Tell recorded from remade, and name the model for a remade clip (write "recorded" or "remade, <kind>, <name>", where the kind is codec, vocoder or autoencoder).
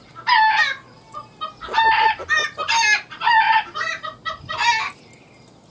recorded